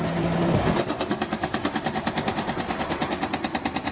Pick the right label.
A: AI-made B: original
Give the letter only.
B